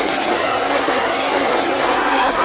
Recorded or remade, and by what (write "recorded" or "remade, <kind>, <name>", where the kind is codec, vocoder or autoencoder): remade, codec, SNAC